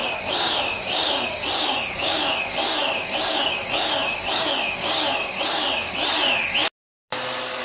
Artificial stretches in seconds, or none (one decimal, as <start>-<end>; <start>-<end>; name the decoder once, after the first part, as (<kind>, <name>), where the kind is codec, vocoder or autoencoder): 0.0-6.0 (codec, DAC)